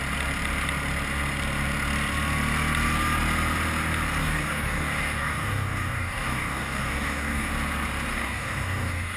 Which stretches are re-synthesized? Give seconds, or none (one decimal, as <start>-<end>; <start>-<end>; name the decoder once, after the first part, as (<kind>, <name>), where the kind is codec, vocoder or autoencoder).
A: 4.2-7.5 (codec, DAC); 8.1-9.2